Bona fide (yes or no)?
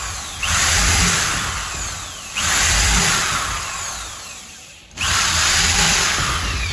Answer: yes